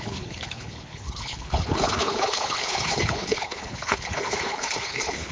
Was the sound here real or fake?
fake